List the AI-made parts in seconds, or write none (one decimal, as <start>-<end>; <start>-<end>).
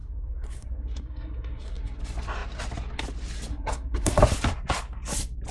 0.0-2.0; 3.5-4.2